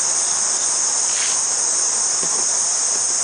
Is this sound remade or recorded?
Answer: recorded